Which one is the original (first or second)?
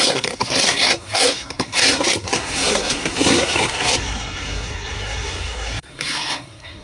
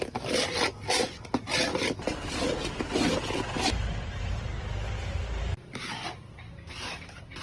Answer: second